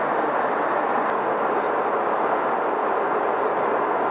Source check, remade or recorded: recorded